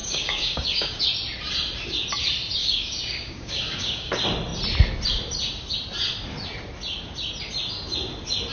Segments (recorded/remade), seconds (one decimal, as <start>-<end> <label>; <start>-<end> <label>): 0.0-1.0 remade; 1.0-2.6 recorded; 2.6-4.1 remade; 4.1-8.5 recorded